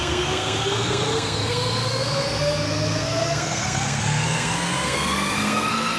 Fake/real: fake